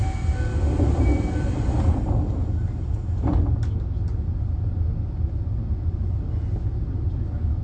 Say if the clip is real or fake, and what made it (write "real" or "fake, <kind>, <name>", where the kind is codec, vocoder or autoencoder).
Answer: real